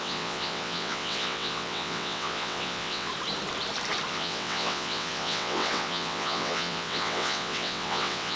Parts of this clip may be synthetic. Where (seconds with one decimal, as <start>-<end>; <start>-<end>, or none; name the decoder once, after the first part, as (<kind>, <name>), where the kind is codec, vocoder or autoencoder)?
0.0-3.1 (vocoder, WaveNeXt); 4.1-8.4